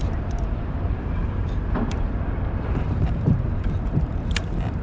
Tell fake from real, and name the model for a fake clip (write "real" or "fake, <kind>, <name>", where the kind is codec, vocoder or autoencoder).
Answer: fake, vocoder, BigVGAN v2